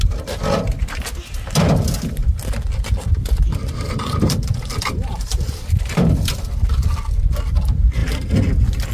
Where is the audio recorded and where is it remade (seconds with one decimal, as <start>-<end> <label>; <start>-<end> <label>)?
0.0-2.2 recorded; 2.2-6.3 remade; 6.3-8.9 recorded